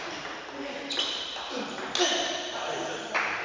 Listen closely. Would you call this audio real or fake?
real